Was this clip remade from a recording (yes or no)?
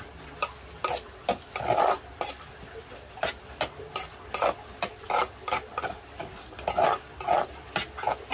no